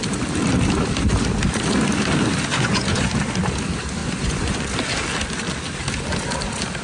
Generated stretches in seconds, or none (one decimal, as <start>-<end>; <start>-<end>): 2.5-3.1; 4.0-4.7